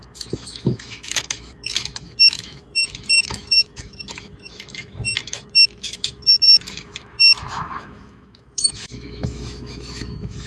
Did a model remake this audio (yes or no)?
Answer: yes